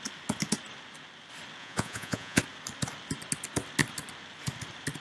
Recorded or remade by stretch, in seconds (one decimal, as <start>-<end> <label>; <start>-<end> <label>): 0.0-1.6 recorded; 1.6-2.4 remade; 2.4-5.0 recorded